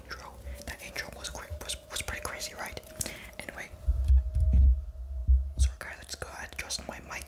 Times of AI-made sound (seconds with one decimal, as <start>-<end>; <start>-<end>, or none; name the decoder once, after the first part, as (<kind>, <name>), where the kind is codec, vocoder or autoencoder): 1.3-3.6 (vocoder, BigVGAN v2)